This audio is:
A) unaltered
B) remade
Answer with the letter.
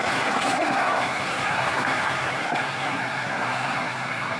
B